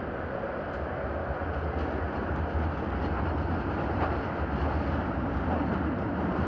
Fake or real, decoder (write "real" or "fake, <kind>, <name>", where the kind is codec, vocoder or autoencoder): real